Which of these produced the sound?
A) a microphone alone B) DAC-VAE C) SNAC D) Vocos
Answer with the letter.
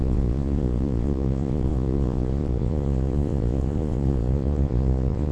D